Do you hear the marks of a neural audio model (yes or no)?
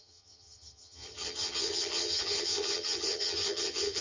yes